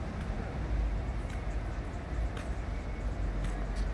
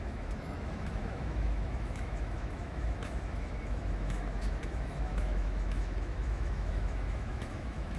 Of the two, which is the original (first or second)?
first